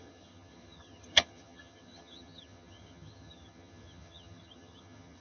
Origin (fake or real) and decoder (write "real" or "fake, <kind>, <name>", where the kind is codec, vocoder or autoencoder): fake, vocoder, HiFi-GAN